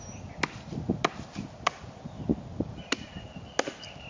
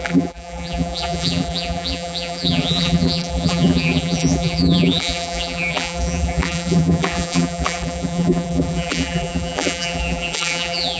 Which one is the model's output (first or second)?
second